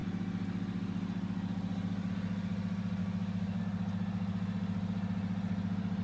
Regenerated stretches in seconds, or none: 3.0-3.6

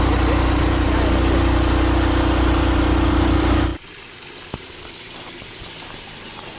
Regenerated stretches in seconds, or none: none

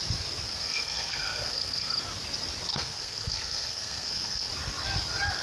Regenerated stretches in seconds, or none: 0.5-1.9; 2.7-4.5

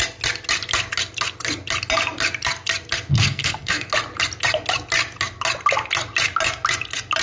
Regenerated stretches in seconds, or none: 3.1-3.9

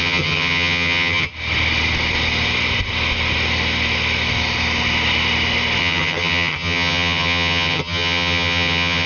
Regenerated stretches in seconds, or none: 0.0-1.3; 5.8-9.1